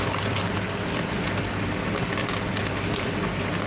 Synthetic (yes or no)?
no